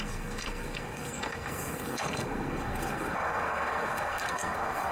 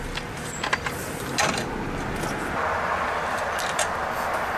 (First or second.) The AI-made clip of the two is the first